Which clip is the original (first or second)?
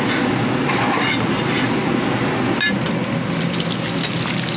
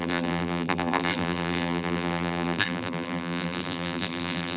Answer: first